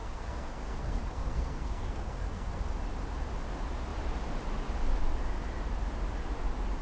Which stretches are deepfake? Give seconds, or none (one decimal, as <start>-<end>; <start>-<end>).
0.0-2.6